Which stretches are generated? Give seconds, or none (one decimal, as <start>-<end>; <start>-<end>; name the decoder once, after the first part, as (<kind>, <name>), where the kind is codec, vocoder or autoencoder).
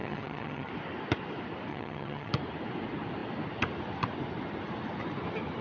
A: 0.0-0.7 (vocoder, HiFi-GAN); 1.7-2.3